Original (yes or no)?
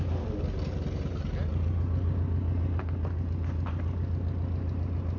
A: yes